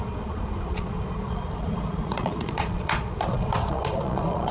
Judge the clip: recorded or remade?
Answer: remade